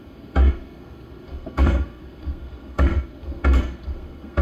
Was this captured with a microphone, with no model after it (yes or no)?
no